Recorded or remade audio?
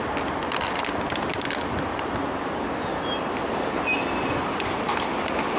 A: recorded